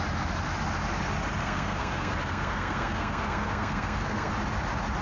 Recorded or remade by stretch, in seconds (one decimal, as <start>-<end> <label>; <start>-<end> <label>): 0.0-1.4 recorded; 1.4-4.3 remade; 4.3-5.0 recorded